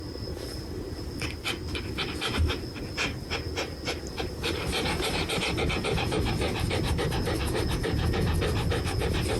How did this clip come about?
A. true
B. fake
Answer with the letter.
A